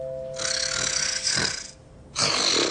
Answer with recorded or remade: recorded